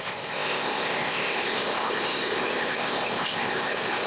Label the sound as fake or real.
fake